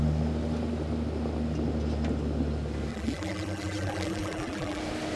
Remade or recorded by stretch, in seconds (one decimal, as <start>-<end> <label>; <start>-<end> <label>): 0.0-2.9 recorded; 2.9-4.8 remade; 4.8-5.2 recorded